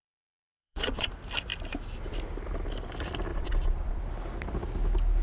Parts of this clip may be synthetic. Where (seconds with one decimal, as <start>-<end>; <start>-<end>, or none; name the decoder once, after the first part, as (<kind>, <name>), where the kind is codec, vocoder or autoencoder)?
0.0-1.1 (vocoder, Vocos); 3.3-4.0